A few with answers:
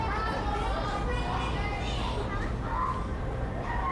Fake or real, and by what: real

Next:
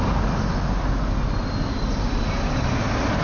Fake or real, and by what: real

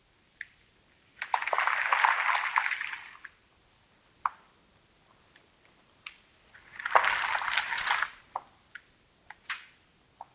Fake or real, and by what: real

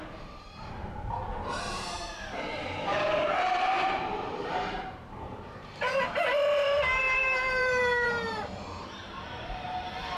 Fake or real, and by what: fake, vocoder, BigVGAN v2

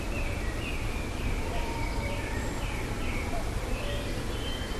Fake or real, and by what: fake, vocoder, BigVGAN v2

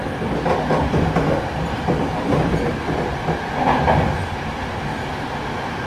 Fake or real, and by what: real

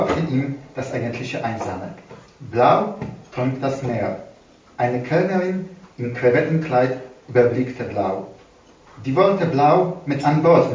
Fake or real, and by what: real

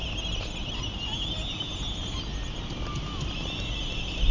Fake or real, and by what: real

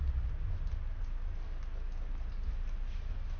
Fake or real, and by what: real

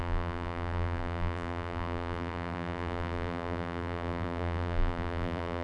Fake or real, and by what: fake, vocoder, BigVGAN v2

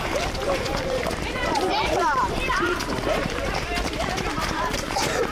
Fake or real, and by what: fake, vocoder, BigVGAN v2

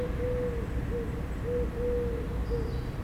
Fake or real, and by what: real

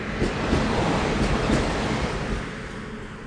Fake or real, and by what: real